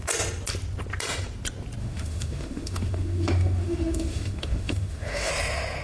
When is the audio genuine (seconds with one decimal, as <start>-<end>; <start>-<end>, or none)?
0.0-1.8; 5.3-5.8